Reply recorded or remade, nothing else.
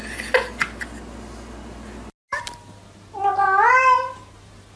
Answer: recorded